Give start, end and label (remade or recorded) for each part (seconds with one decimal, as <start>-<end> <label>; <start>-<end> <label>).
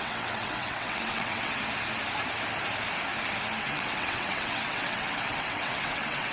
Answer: 0.0-1.6 remade; 1.6-3.6 recorded; 3.6-6.3 remade